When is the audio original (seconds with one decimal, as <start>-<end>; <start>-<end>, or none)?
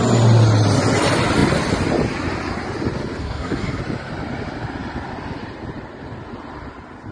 0.0-3.2; 3.8-7.1